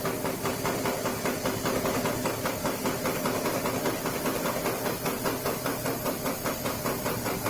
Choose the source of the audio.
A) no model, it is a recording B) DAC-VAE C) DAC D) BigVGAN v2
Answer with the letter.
A